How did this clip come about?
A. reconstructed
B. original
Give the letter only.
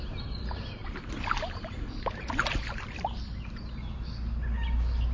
B